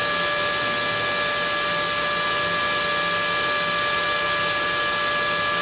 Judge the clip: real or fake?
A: real